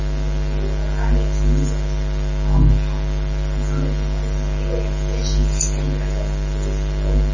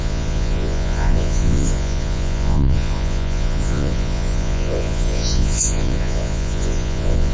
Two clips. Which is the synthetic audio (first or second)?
second